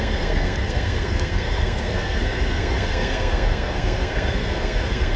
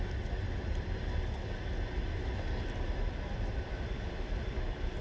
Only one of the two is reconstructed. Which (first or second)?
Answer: first